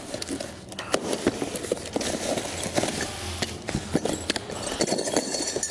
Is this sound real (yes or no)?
yes